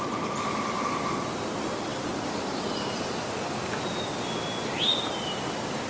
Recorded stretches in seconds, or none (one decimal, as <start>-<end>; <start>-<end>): 0.0-5.9